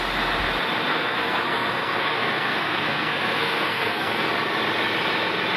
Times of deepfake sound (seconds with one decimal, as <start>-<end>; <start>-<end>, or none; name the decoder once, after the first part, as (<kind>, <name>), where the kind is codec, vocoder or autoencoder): 0.9-4.3 (codec, SNAC)